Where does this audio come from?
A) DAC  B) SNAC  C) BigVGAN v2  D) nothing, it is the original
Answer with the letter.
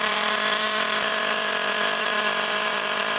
C